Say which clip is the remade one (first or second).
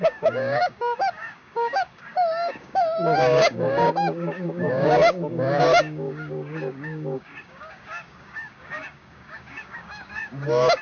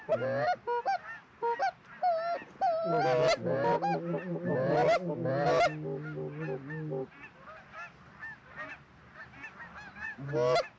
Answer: first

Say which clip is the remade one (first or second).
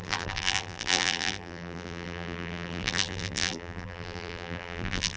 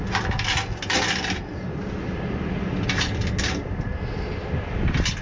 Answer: first